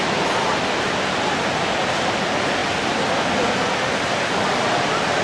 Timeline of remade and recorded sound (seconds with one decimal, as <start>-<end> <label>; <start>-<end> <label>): 0.0-5.2 recorded